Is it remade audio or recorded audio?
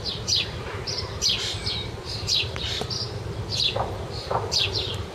remade